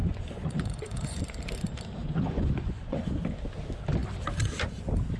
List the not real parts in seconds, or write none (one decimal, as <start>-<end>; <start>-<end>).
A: 0.0-1.2; 2.0-3.0